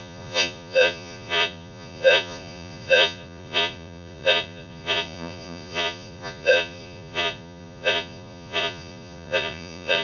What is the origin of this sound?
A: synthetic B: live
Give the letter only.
A